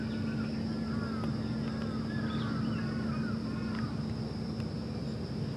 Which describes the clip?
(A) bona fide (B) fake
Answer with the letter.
A